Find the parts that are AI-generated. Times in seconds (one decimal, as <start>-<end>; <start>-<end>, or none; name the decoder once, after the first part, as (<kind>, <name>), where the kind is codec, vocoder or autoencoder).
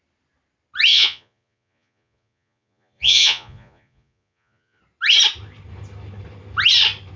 0.9-4.8 (vocoder, Vocos)